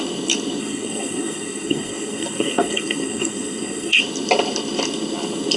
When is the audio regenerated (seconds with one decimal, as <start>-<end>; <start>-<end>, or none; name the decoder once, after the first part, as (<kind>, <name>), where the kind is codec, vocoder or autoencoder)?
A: 0.6-4.0 (codec, SNAC)